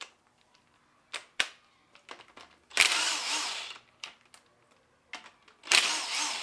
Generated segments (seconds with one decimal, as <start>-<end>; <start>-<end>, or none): 1.2-2.3; 2.7-4.3